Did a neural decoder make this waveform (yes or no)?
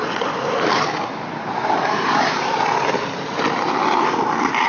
no